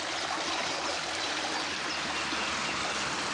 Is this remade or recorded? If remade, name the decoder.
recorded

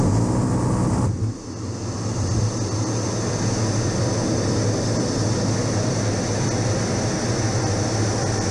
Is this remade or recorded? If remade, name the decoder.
recorded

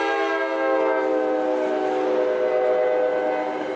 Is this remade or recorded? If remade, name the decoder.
recorded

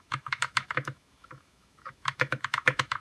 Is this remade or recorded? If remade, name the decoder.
remade, autoencoder, DAC-VAE